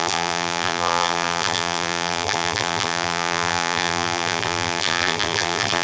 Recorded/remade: remade